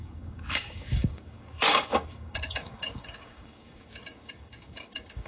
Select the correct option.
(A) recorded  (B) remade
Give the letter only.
B